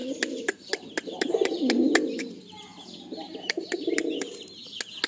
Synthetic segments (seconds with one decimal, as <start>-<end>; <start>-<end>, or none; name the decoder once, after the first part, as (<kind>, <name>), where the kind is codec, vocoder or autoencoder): none